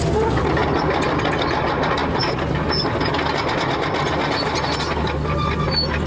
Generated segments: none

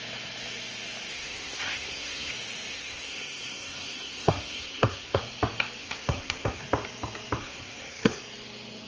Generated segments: 1.1-2.3 (codec, SNAC); 2.7-5.2; 5.8-6.6; 7.4-8.2